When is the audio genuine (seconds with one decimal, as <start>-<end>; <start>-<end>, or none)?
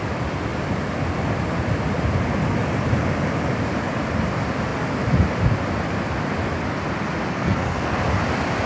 0.0-7.3; 8.0-8.7